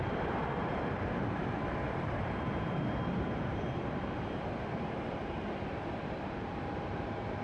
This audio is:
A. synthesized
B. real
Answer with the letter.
A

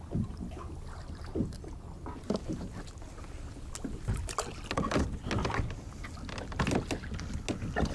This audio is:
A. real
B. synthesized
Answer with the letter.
A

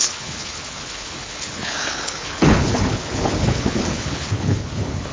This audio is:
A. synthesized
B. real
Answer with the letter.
A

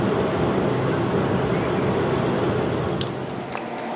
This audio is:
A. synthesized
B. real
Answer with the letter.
B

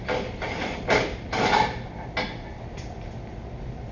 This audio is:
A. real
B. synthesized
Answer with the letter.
A